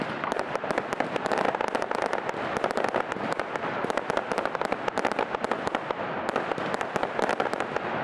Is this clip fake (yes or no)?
no